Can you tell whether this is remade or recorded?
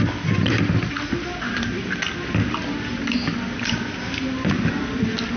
recorded